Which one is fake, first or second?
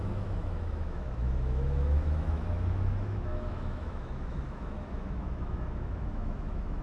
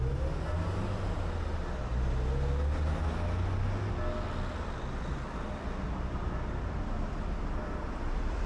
first